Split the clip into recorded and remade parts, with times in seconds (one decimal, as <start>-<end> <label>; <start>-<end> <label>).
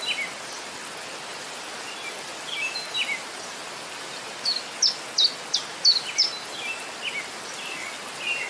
0.0-8.5 recorded